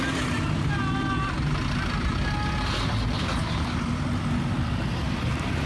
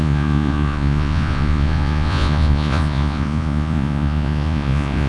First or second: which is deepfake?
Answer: second